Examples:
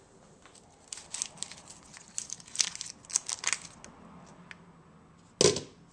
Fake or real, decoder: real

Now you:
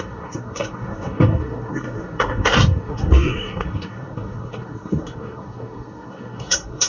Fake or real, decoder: fake, codec, SNAC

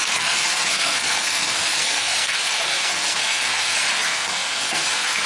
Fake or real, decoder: fake, codec, SNAC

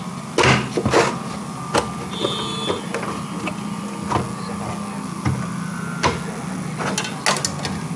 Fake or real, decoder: real